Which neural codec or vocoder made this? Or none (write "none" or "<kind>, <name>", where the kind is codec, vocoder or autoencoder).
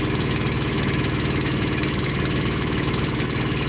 autoencoder, DAC-VAE